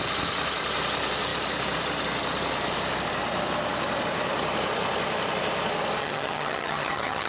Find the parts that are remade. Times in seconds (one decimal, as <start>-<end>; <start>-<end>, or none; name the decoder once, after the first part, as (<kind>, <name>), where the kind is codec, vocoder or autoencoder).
6.0-7.3 (vocoder, HiFi-GAN)